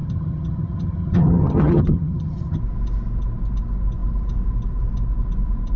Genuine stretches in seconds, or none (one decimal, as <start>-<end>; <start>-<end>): 2.6-5.8